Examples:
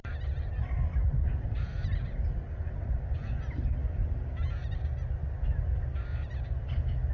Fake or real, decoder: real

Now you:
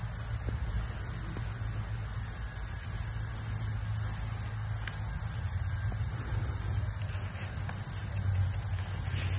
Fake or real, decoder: real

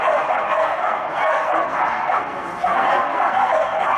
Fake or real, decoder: fake, codec, SNAC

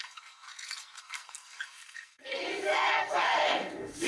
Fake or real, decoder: fake, codec, SNAC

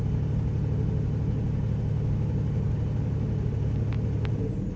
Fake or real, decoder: real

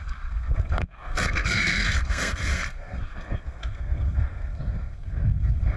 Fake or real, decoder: fake, codec, SNAC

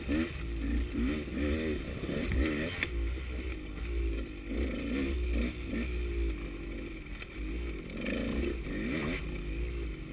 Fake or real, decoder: real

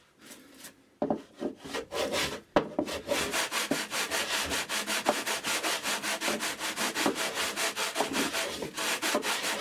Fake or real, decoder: real